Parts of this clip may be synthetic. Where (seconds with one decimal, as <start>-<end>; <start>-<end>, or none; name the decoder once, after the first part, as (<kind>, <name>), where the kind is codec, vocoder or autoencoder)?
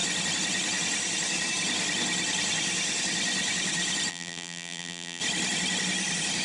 4.1-5.2 (vocoder, BigVGAN v2)